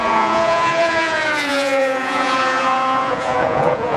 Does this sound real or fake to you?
fake